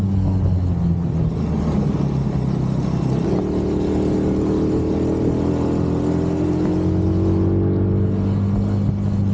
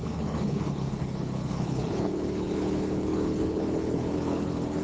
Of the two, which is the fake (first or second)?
second